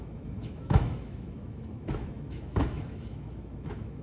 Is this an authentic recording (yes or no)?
no